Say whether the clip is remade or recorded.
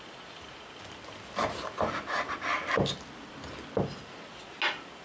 recorded